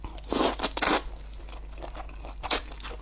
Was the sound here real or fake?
real